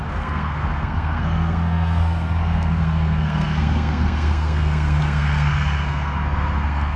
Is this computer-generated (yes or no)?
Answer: yes